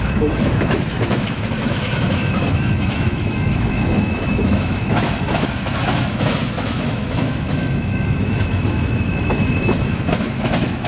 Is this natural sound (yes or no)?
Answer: no